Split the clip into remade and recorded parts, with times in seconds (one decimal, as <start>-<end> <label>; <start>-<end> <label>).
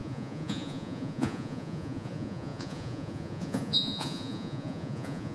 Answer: 0.0-5.3 remade